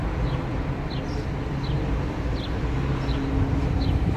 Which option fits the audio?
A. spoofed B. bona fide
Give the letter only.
B